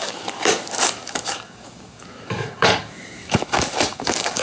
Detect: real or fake fake